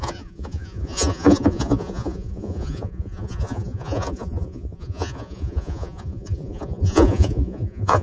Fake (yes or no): yes